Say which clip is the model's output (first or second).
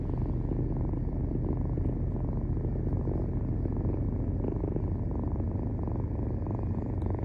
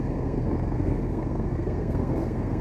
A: second